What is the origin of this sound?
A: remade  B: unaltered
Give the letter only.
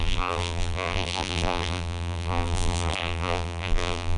A